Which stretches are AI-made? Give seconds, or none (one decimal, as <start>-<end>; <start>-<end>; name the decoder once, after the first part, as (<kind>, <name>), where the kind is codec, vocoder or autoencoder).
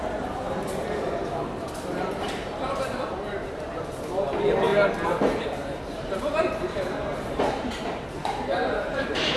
0.0-9.4 (vocoder, BigVGAN v2)